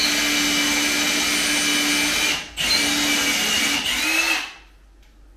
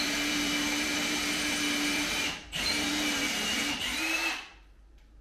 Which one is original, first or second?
first